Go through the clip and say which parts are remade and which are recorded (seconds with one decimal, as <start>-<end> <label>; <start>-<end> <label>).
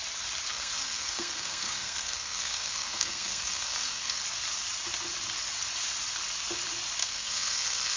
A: 0.0-0.5 recorded; 0.5-4.2 remade; 4.2-7.0 recorded; 7.0-8.0 remade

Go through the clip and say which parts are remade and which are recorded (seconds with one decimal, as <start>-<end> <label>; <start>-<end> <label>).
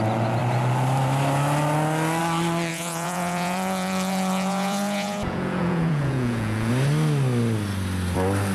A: 0.0-2.7 recorded; 2.7-6.7 remade; 6.7-8.5 recorded